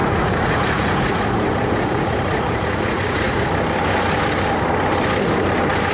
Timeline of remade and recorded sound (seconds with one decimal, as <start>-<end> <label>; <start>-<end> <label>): 0.0-3.5 remade; 3.5-5.9 recorded